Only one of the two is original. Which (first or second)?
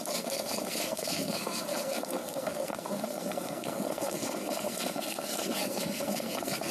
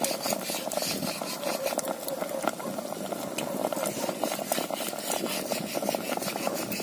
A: second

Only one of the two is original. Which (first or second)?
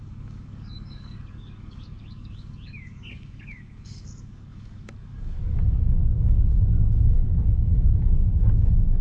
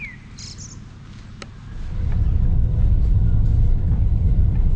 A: second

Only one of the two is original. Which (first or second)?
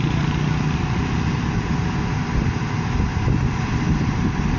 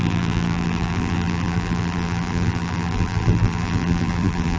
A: first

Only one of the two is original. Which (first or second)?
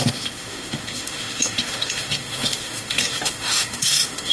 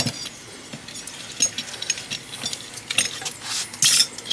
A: second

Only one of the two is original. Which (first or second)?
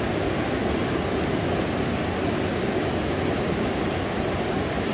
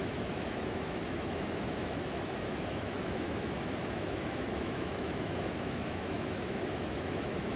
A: first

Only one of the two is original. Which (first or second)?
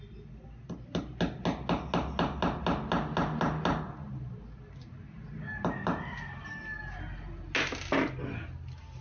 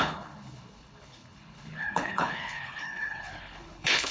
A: first